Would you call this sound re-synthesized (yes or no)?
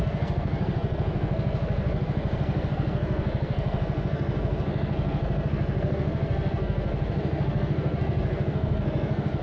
yes